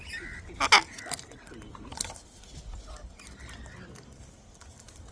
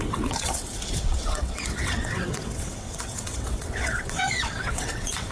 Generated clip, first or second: second